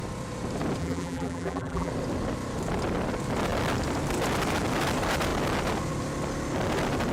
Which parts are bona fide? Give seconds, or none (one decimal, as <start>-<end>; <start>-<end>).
0.0-0.8; 1.9-7.1